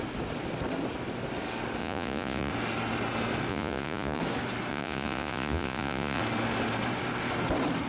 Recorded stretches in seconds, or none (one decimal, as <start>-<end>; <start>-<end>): 0.0-1.8; 2.5-3.5; 4.2-4.7; 6.2-7.9